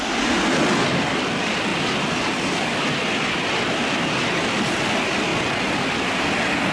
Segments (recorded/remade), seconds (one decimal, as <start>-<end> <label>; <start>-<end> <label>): 0.0-6.7 recorded